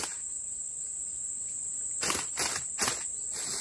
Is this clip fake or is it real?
real